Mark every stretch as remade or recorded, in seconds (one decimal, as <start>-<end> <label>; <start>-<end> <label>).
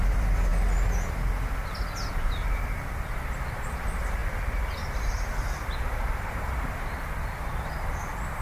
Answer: 0.0-0.5 remade; 0.5-2.1 recorded; 2.1-8.4 remade